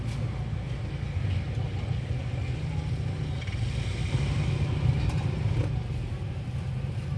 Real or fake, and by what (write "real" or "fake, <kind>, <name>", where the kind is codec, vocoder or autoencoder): real